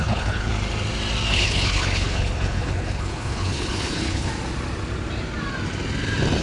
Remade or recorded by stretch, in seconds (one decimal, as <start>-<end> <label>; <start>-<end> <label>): 0.0-0.5 remade; 0.5-1.3 recorded; 1.3-4.3 remade; 4.3-6.4 recorded